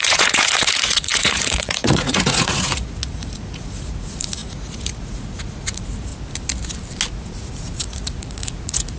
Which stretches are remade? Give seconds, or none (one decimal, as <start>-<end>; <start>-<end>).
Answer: 0.0-6.1; 7.1-9.0